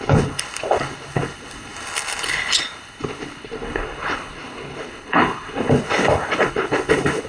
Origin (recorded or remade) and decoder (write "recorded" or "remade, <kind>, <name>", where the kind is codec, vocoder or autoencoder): remade, codec, HILCodec